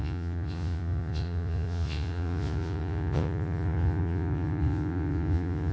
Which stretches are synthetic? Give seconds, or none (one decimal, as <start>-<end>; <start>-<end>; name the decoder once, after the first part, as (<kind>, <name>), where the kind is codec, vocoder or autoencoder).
0.0-5.7 (vocoder, Vocos)